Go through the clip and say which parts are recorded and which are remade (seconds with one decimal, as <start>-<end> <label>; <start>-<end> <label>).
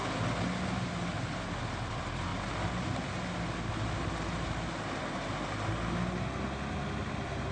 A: 0.0-7.5 recorded